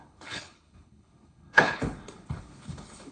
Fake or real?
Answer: fake